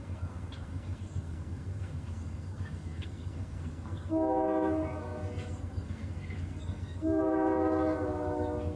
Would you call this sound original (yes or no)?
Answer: no